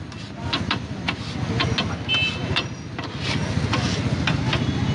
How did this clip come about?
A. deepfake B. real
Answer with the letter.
B